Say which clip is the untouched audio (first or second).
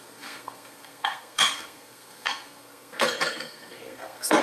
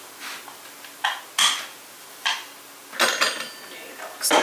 second